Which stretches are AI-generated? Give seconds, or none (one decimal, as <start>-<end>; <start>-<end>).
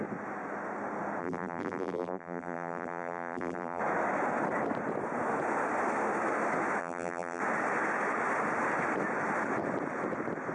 1.2-3.8; 6.8-7.4